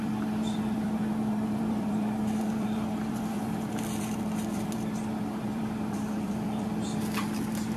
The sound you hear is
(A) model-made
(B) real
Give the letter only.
A